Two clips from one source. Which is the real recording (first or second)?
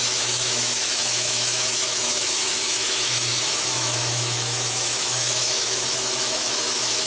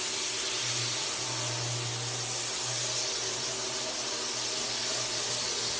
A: second